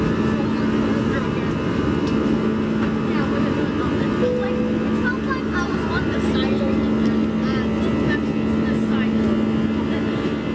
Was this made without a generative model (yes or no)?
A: yes